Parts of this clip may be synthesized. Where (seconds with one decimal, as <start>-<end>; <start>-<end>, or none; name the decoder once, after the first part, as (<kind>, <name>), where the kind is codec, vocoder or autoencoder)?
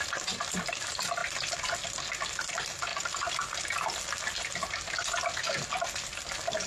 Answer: none